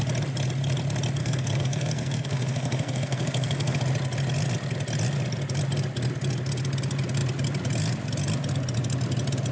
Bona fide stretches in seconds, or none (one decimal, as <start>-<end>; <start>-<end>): 0.0-1.2; 3.8-9.5